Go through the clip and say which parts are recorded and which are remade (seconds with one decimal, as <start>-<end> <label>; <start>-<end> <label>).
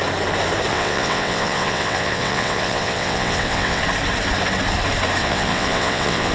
0.0-0.7 recorded; 0.7-3.8 remade; 3.8-5.2 recorded; 5.2-6.3 remade